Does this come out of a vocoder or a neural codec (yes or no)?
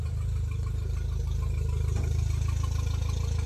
no